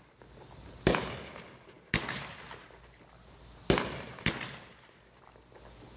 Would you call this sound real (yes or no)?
yes